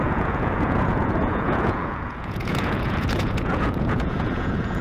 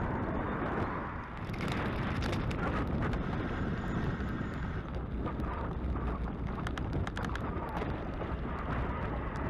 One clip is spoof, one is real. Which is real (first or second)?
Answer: second